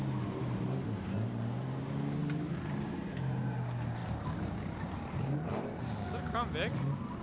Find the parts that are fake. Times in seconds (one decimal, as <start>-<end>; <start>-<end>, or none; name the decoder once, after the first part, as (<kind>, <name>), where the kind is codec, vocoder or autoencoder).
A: 2.2-3.0 (vocoder, BigVGAN v2); 4.0-5.9